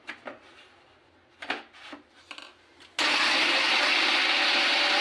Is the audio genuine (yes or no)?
yes